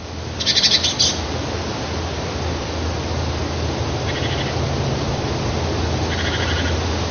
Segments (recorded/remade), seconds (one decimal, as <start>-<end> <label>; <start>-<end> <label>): 0.0-7.1 recorded

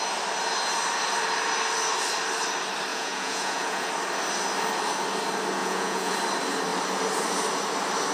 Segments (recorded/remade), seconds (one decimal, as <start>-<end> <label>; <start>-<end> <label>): 0.0-2.9 recorded; 2.9-3.9 remade; 3.9-5.6 recorded; 5.6-6.1 remade; 6.1-8.1 recorded

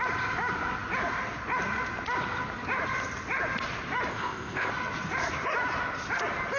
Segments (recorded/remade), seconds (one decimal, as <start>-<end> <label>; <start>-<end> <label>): 0.0-4.1 recorded; 4.1-4.7 remade; 4.7-6.6 recorded

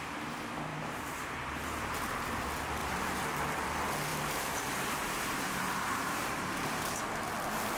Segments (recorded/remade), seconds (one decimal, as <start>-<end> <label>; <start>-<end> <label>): 0.0-0.7 recorded; 0.7-2.1 remade; 2.1-2.8 recorded; 2.8-3.4 remade; 3.4-4.1 recorded; 4.1-7.0 remade; 7.0-7.8 recorded

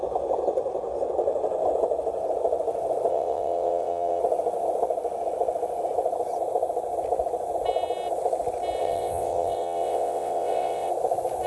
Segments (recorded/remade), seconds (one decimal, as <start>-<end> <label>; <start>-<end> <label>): 0.0-3.1 recorded; 3.1-4.2 remade; 4.2-8.8 recorded; 8.8-10.9 remade; 10.9-11.5 recorded

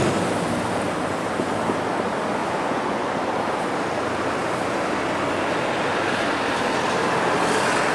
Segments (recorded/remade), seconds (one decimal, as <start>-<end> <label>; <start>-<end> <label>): 0.0-2.4 recorded; 2.4-3.1 remade; 3.1-7.9 recorded

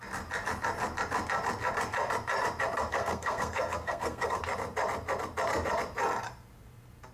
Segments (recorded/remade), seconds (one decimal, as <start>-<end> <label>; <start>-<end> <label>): 0.0-2.9 recorded; 2.9-4.4 remade; 4.4-7.1 recorded

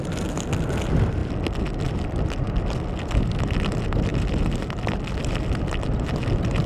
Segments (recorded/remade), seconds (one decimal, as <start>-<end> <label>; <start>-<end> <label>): 0.0-6.7 recorded